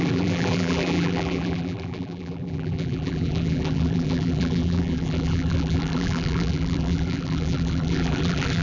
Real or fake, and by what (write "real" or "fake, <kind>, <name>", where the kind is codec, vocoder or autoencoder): fake, vocoder, BigVGAN v2